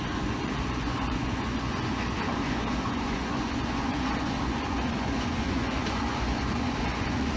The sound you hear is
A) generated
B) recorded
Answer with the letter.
A